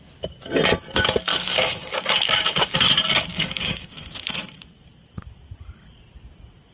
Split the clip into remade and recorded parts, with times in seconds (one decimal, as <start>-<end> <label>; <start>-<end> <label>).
0.0-1.3 recorded; 1.3-2.9 remade; 2.9-3.3 recorded; 3.3-3.9 remade; 3.9-6.7 recorded